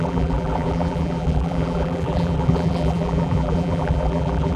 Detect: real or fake fake